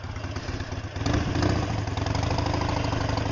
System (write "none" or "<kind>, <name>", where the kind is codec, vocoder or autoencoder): none